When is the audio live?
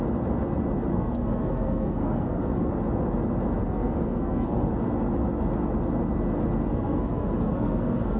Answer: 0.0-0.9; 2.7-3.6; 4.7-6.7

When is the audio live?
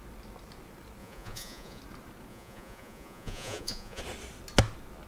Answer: 0.0-1.0; 1.8-2.3; 4.0-5.1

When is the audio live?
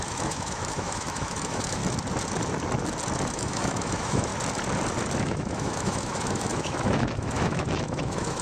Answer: 1.8-3.3; 4.3-5.2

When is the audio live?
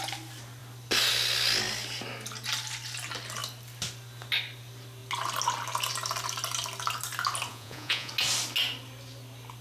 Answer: 0.0-7.5; 8.1-9.6